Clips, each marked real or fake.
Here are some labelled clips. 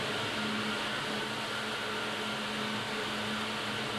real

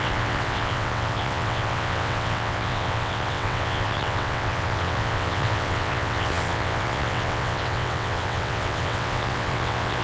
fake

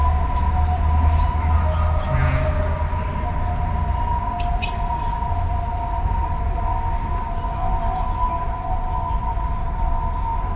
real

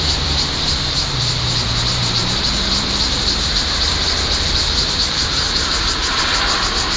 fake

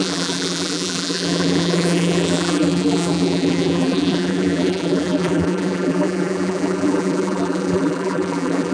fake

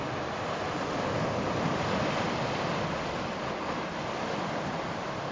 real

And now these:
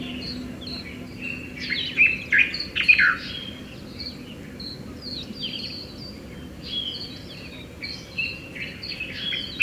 real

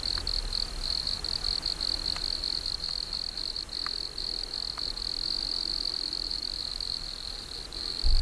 real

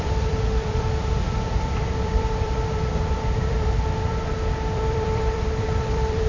fake